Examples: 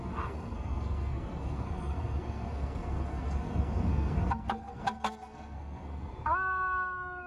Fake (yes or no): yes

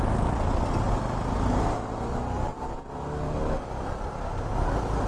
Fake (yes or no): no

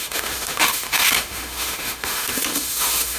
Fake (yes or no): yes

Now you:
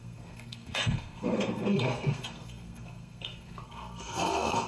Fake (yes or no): yes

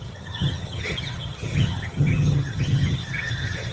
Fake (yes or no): yes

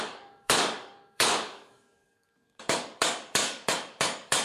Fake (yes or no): yes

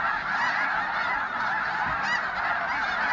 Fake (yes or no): no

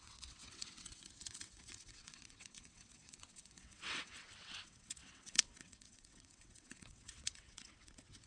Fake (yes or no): yes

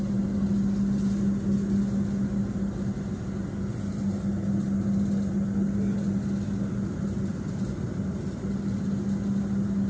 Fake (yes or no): no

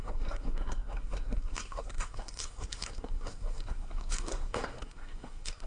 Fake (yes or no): yes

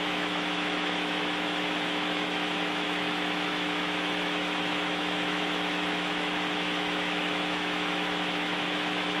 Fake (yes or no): yes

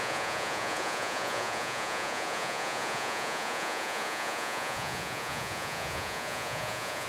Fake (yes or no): yes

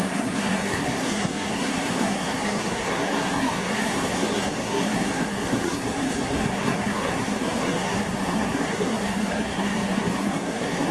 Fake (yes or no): yes